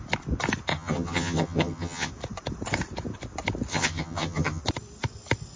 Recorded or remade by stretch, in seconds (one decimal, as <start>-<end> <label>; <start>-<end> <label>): 0.0-0.7 recorded; 0.7-2.1 remade; 2.1-3.7 recorded; 3.7-4.6 remade; 4.6-5.6 recorded